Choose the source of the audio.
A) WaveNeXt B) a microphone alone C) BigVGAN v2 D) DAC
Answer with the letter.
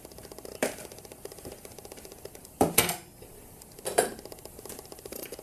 C